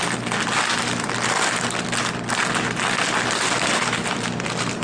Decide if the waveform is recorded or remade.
recorded